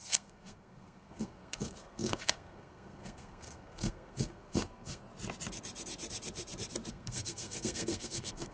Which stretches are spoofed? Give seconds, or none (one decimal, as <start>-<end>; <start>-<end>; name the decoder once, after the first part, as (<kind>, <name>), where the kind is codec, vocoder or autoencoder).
0.0-5.1 (codec, SNAC); 6.9-8.5